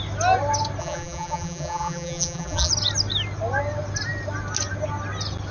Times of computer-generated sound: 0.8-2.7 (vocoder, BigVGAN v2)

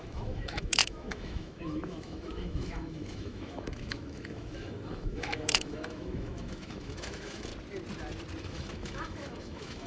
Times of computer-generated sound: 0.0-7.5 (autoencoder, DAC-VAE); 8.4-9.9

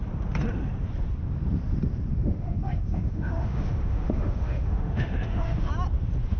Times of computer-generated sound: 2.1-5.7 (autoencoder, DAC-VAE)